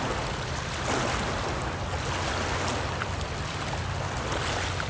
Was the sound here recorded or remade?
recorded